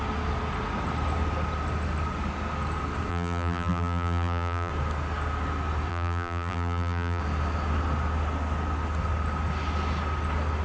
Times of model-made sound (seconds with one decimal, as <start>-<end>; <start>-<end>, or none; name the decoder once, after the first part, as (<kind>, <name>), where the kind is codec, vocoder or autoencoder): 3.1-4.7 (vocoder, BigVGAN v2); 5.9-7.2